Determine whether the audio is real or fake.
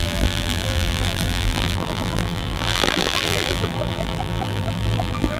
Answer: fake